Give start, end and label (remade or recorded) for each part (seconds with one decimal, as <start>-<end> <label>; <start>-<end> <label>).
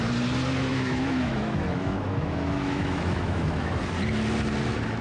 0.0-0.7 recorded; 0.7-3.7 remade; 3.7-5.0 recorded